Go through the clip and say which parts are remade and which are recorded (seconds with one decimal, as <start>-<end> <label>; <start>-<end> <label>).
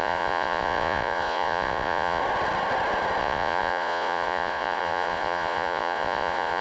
0.0-2.2 remade; 2.2-3.2 recorded; 3.2-6.6 remade